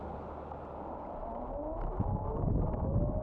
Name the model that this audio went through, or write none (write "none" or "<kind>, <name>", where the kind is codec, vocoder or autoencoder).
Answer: none